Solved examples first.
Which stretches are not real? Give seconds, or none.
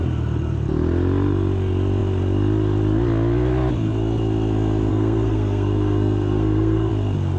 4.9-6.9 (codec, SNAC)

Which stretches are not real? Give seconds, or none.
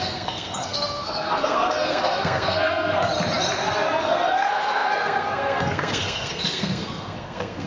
0.0-3.1 (codec, SNAC); 4.0-7.7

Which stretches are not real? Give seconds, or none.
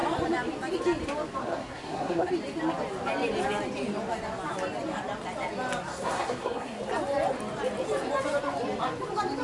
1.4-2.3 (codec, SNAC); 5.9-6.8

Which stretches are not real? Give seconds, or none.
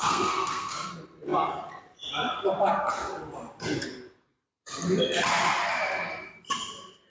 0.0-0.9 (codec, SNAC)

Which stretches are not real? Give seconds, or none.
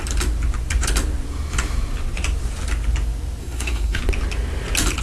3.4-4.0 (codec, SNAC)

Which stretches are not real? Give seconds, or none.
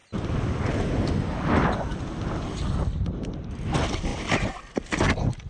none